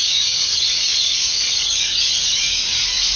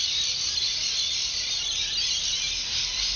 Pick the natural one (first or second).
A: second